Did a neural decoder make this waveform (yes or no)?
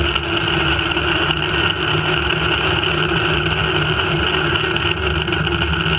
no